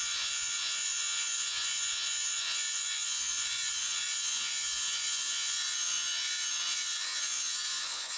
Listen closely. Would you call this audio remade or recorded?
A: remade